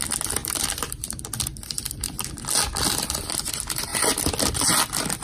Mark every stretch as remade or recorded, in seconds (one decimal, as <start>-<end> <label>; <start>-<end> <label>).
0.0-0.4 recorded; 0.4-3.5 remade; 3.5-5.2 recorded